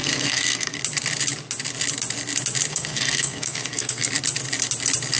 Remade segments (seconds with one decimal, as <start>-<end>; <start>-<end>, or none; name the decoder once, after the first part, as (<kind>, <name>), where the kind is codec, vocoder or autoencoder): 0.0-0.8 (codec, SNAC); 2.7-4.1